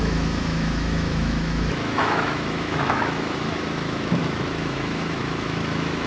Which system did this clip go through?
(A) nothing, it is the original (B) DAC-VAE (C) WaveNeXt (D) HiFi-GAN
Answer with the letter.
B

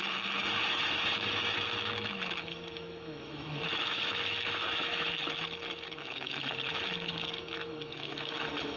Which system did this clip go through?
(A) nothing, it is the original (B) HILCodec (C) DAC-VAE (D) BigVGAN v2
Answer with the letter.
C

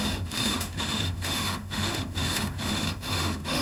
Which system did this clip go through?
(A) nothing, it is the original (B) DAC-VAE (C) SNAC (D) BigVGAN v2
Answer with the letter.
B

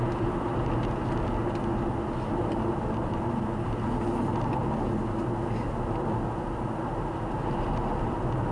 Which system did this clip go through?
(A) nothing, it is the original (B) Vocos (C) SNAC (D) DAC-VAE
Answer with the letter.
A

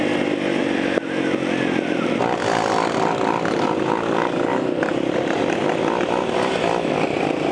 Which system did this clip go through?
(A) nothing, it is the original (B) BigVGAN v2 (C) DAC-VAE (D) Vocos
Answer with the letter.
A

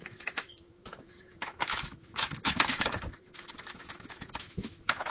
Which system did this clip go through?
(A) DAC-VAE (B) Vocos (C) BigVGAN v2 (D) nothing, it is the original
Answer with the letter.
A